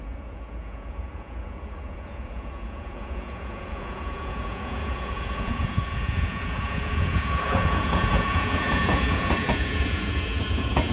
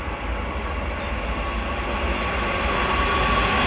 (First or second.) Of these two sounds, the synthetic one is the first